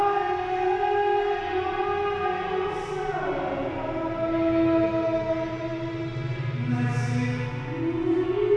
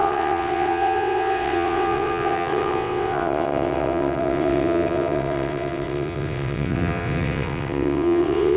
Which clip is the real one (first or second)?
first